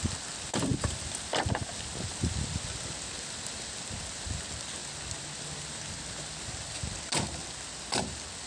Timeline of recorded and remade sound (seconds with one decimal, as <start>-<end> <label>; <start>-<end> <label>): 0.0-8.5 recorded